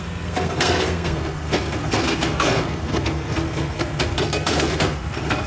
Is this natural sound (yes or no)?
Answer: no